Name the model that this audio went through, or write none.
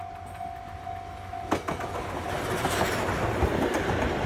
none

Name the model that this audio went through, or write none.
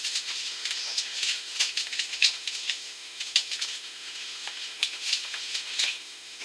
autoencoder, DAC-VAE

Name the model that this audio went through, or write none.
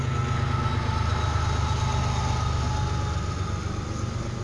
none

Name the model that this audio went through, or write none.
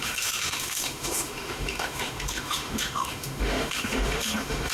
autoencoder, DAC-VAE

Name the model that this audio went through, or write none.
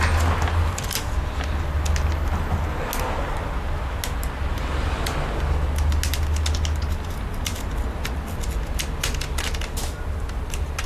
none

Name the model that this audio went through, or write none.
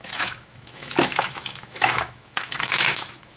autoencoder, DAC-VAE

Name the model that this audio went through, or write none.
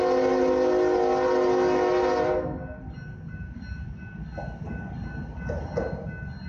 none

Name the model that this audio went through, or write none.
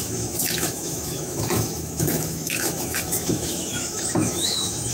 autoencoder, DAC-VAE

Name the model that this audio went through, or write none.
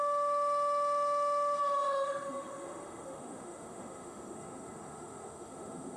autoencoder, DAC-VAE